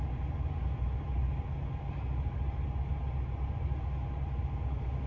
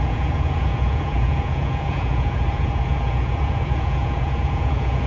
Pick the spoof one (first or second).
second